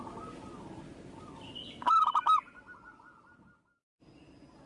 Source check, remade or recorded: recorded